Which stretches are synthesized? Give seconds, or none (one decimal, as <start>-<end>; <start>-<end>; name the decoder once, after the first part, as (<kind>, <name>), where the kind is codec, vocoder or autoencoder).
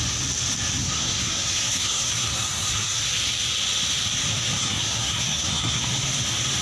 0.8-3.0 (codec, SNAC); 4.6-5.8